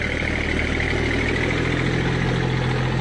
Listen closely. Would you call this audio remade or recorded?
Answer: recorded